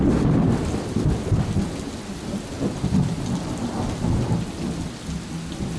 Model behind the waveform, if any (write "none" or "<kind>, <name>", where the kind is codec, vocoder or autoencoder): none